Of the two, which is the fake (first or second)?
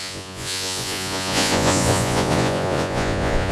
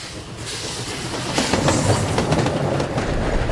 first